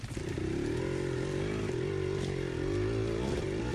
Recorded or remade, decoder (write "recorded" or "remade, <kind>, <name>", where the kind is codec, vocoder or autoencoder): recorded